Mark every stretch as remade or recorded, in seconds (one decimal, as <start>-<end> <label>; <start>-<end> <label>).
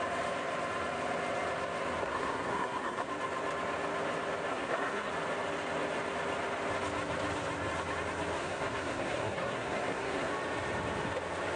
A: 0.0-2.0 recorded; 2.0-3.1 remade; 3.1-4.5 recorded; 4.5-5.1 remade; 5.1-8.4 recorded; 8.4-10.3 remade; 10.3-11.6 recorded